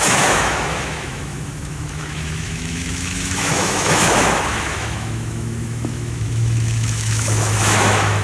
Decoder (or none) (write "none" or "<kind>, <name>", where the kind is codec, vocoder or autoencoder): autoencoder, DAC-VAE